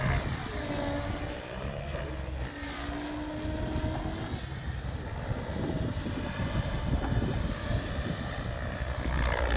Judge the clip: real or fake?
real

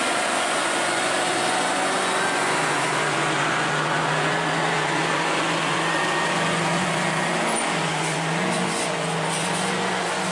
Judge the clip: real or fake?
fake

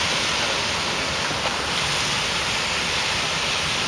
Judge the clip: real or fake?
real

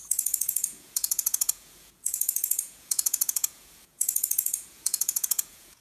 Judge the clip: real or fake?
fake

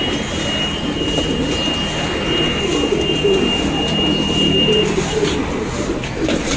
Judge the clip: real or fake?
real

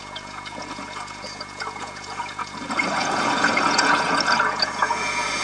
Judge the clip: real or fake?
fake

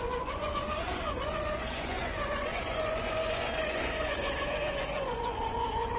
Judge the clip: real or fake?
fake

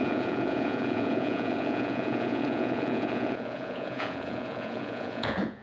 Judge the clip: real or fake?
fake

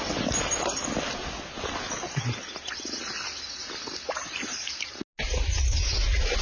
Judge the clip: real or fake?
real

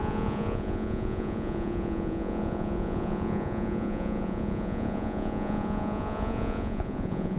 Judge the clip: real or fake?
fake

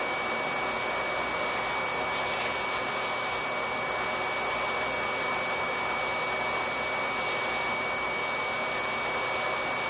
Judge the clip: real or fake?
real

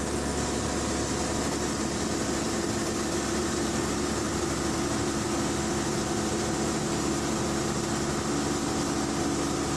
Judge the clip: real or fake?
real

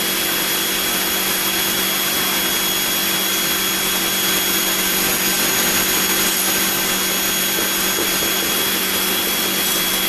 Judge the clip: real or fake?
real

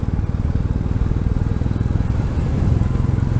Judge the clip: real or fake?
real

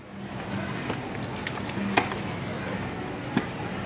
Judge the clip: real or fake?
real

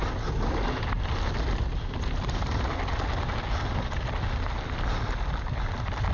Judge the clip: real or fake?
real